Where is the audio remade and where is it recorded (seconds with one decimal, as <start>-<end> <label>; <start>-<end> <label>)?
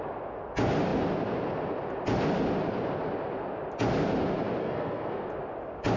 0.0-4.6 recorded; 4.6-5.3 remade; 5.3-6.0 recorded